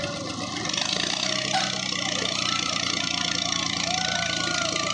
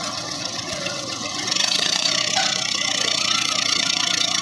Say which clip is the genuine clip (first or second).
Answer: first